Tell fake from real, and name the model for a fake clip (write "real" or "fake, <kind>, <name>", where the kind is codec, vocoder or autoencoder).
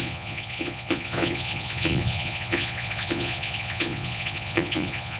fake, vocoder, Vocos